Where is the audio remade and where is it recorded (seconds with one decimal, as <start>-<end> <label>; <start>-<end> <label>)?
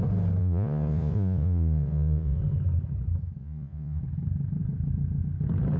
0.0-0.4 recorded; 0.4-2.4 remade; 2.4-3.4 recorded; 3.4-4.0 remade; 4.0-5.8 recorded